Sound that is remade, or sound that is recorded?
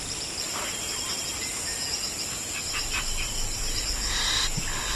recorded